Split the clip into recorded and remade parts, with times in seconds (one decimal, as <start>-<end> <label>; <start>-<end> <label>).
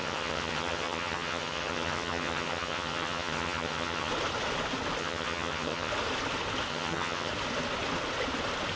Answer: 0.0-4.1 remade; 4.1-5.0 recorded; 5.0-5.9 remade; 5.9-6.7 recorded; 6.7-7.3 remade; 7.3-8.8 recorded